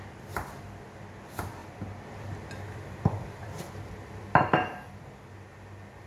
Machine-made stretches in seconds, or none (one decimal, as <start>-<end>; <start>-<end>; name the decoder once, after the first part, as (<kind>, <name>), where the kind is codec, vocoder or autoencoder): 1.6-5.3 (vocoder, BigVGAN v2)